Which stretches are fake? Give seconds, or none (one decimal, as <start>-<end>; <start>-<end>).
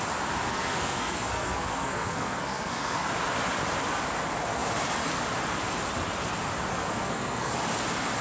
0.5-3.1; 6.7-7.5